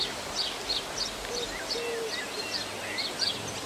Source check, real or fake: real